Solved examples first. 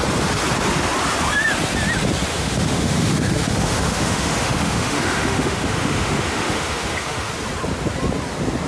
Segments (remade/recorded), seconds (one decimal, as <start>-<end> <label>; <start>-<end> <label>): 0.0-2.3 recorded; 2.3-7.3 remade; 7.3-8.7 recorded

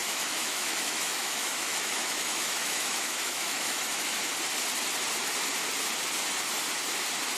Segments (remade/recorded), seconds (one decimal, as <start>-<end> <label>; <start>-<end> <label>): 0.0-4.2 remade; 4.2-7.4 recorded

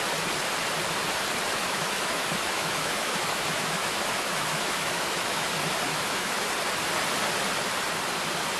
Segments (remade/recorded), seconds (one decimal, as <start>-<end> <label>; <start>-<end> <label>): 0.0-1.5 recorded; 1.5-5.5 remade; 5.5-5.9 recorded; 5.9-6.5 remade; 6.5-8.6 recorded

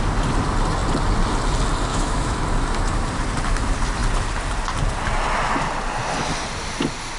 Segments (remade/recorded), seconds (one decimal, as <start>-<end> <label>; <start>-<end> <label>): 0.0-1.9 recorded; 1.9-2.4 remade; 2.4-7.2 recorded

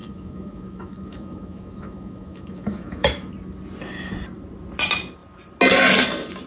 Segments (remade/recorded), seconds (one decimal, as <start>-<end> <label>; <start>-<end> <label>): 0.0-3.3 remade; 3.3-6.5 recorded

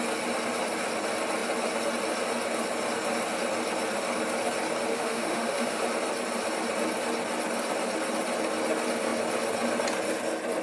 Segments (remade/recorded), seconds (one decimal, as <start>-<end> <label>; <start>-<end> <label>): 0.0-4.9 recorded; 4.9-5.8 remade; 5.8-10.6 recorded

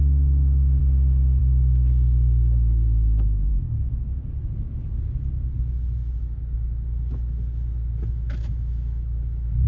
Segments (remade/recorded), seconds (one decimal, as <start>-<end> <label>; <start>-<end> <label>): 0.0-0.8 remade; 0.8-1.4 recorded; 1.4-3.5 remade; 3.5-8.1 recorded; 8.1-9.7 remade

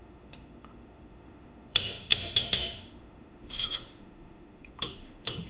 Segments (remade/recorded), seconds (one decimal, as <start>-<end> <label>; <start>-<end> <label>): 0.0-5.5 remade